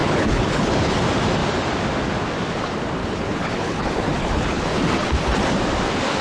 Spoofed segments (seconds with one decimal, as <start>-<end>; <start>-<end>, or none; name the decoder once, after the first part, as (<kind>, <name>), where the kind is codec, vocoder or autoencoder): 0.0-0.9 (codec, HILCodec); 3.0-4.6

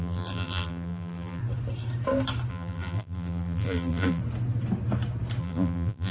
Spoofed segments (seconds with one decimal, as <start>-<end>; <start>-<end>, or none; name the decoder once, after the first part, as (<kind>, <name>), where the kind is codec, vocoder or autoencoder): 0.0-1.4 (vocoder, BigVGAN v2); 2.5-4.2; 5.4-6.1